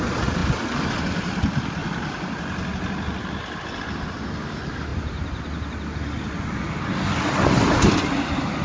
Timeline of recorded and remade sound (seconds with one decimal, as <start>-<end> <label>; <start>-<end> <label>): 0.0-8.6 recorded

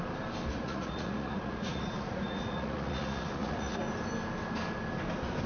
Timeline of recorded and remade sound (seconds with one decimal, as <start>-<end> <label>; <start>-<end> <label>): 0.0-0.5 recorded; 0.5-3.8 remade; 3.8-5.5 recorded

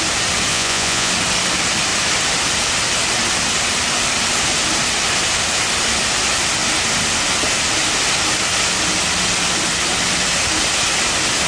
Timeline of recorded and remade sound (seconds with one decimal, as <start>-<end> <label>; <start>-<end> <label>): 0.0-0.5 recorded; 0.5-1.1 remade; 1.1-11.5 recorded

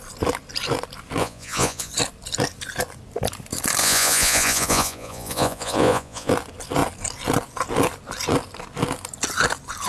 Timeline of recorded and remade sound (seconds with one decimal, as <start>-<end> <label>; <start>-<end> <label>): 0.0-1.2 recorded; 1.2-1.9 remade; 1.9-3.8 recorded; 3.8-6.3 remade; 6.3-9.9 recorded

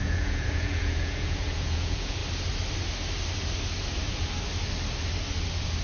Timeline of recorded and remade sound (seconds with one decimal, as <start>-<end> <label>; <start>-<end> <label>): 0.0-2.2 remade; 2.2-5.8 recorded

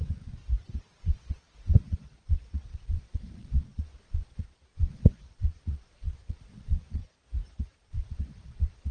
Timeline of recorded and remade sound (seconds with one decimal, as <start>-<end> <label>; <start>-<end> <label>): 0.0-0.4 remade; 0.4-1.0 recorded; 1.0-7.0 remade; 7.0-7.8 recorded; 7.8-8.9 remade

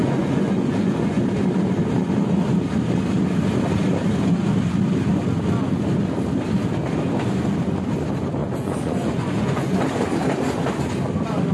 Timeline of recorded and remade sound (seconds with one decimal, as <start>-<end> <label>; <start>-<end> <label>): 0.0-1.2 remade; 1.2-8.4 recorded; 8.4-9.8 remade; 9.8-11.5 recorded